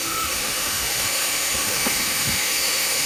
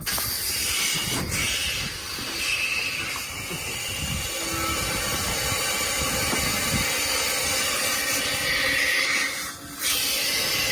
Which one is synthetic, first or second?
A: first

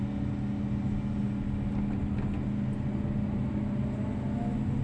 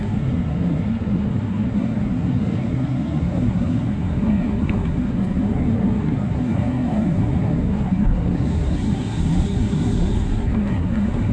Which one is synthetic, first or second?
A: second